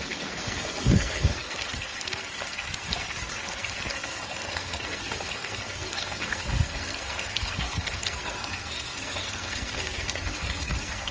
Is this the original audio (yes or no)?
no